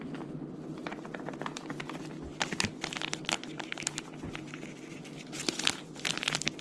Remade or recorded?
recorded